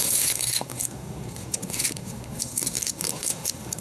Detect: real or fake fake